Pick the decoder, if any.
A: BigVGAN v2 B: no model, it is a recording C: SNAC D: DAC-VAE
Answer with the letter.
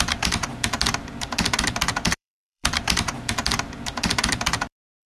A